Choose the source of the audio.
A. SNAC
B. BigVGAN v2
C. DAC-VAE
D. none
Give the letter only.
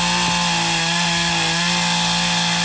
D